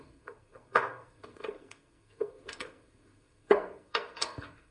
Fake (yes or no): yes